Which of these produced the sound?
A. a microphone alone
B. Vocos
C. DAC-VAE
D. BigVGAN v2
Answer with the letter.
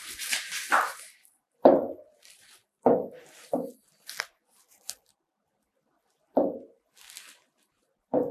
D